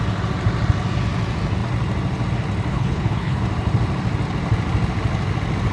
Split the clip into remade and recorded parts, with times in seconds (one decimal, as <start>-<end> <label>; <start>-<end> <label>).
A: 0.0-2.7 recorded; 2.7-3.4 remade; 3.4-5.7 recorded